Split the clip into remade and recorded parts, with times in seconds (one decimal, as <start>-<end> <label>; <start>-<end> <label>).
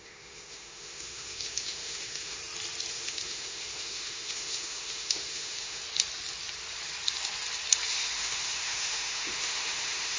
0.0-2.4 remade; 2.4-2.9 recorded; 2.9-5.8 remade; 5.8-7.9 recorded; 7.9-10.2 remade